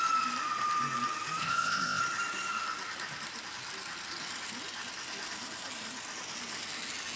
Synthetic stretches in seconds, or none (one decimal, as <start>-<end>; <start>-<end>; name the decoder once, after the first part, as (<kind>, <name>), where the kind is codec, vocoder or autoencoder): 1.4-2.0 (codec, ZipCodec)